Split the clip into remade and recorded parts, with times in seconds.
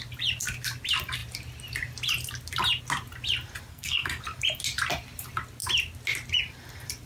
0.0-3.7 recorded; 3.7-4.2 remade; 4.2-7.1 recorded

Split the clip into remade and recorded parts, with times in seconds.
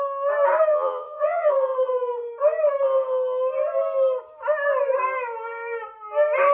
0.0-0.7 recorded; 0.7-1.5 remade; 1.5-6.5 recorded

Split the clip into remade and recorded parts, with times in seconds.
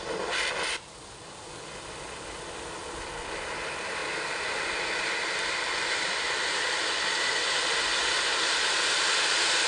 0.0-9.7 recorded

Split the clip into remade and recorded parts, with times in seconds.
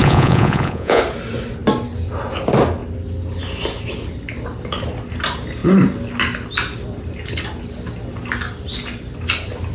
0.0-1.0 remade; 1.0-9.7 recorded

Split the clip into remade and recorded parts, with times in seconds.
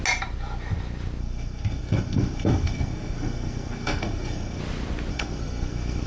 0.0-1.2 recorded; 1.2-4.6 remade; 4.6-5.1 recorded; 5.1-6.1 remade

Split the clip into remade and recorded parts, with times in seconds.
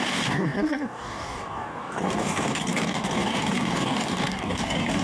0.0-5.0 remade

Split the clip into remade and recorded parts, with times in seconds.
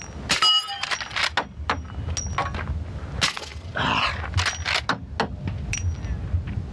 0.0-3.5 recorded; 3.5-4.1 remade; 4.1-6.7 recorded